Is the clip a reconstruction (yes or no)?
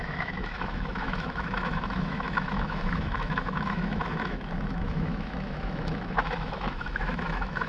yes